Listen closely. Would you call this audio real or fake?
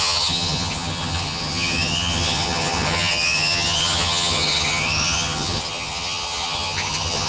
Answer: fake